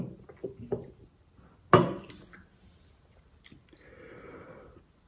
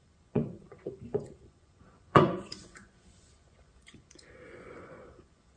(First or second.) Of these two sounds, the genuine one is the first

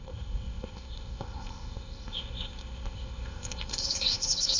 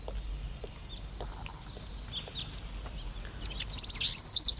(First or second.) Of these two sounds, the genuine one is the second